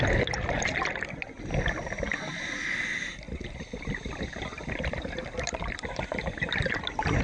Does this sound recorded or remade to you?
recorded